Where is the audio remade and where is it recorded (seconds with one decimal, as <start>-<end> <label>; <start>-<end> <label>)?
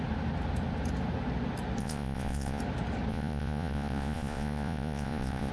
0.0-1.8 recorded; 1.8-2.6 remade; 2.6-3.1 recorded; 3.1-5.5 remade